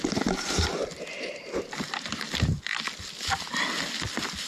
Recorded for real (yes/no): yes